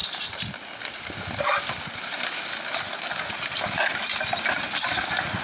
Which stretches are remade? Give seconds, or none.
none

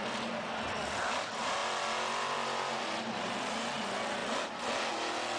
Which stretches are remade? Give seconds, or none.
none